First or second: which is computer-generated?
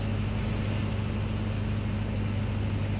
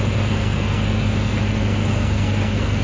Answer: second